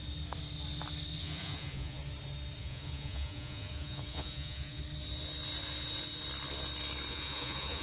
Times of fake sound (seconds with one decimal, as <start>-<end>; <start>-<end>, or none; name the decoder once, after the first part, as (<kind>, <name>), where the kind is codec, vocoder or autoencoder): 1.2-2.0 (vocoder, Vocos); 2.6-4.8; 7.1-7.8